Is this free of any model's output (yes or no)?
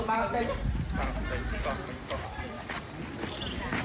yes